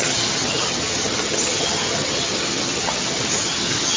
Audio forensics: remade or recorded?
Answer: remade